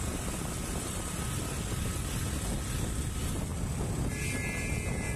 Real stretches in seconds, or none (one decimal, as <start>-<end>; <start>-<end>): 0.0-5.2